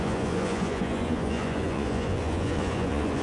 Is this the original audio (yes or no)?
no